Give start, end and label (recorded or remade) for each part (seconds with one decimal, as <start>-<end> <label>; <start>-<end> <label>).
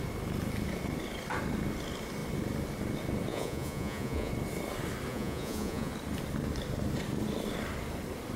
0.0-3.3 recorded; 3.3-4.3 remade; 4.3-5.1 recorded; 5.1-5.9 remade; 5.9-8.4 recorded